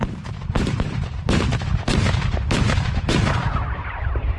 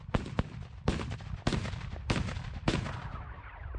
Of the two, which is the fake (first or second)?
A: first